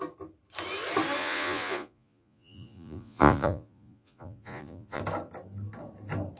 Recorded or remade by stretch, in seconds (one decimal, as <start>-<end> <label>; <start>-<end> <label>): 0.0-1.2 recorded; 1.2-5.0 remade; 5.0-6.4 recorded